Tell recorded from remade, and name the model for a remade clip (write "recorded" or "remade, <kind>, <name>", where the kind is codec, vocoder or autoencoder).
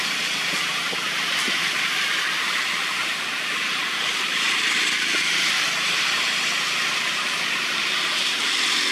recorded